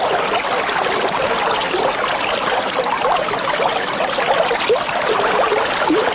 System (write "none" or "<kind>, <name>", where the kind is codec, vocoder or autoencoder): none